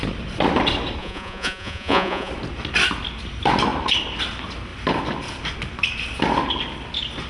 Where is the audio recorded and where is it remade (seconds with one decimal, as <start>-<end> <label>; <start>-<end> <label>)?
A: 0.0-1.0 recorded; 1.0-2.3 remade; 2.3-7.3 recorded